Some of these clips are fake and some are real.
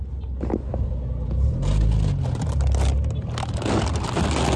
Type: real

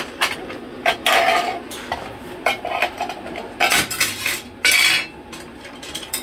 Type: real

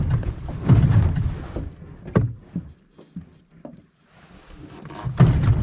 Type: real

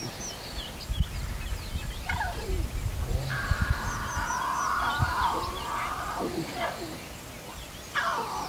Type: real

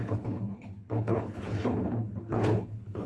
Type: fake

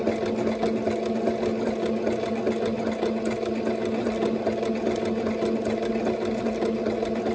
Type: real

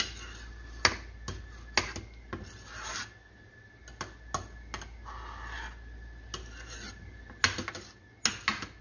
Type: real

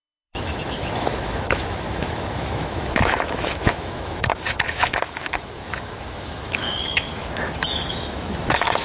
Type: fake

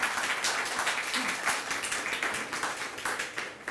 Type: real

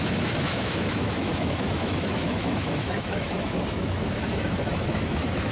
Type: fake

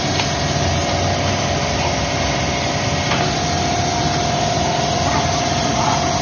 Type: real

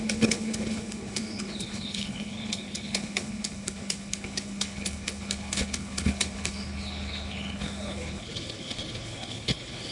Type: fake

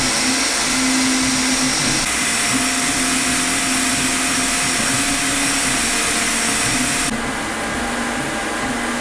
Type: real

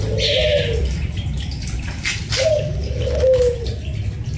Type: real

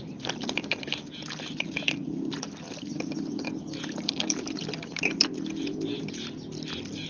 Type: real